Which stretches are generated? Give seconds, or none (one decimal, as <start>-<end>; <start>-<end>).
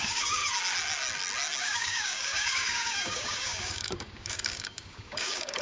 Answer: 0.0-0.4; 1.6-5.6